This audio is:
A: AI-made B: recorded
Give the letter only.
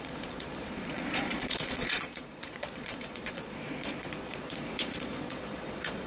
A